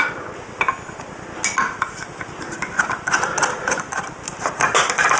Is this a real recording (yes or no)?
yes